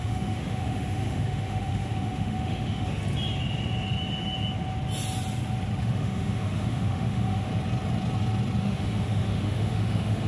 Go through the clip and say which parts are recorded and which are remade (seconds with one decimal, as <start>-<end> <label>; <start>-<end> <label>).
0.0-3.0 remade; 3.0-5.8 recorded; 5.8-7.5 remade; 7.5-8.6 recorded; 8.6-10.3 remade